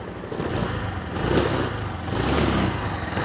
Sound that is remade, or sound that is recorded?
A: recorded